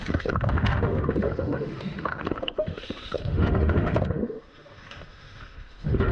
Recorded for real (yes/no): no